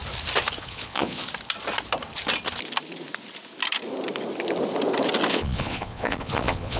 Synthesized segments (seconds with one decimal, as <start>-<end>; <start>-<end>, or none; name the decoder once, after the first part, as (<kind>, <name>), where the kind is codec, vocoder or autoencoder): 0.6-1.2 (vocoder, Vocos); 5.3-6.8